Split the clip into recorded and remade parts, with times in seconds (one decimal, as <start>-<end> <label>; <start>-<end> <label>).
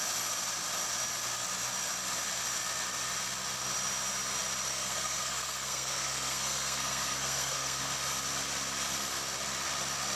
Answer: 0.0-4.7 recorded; 4.7-7.8 remade; 7.8-10.2 recorded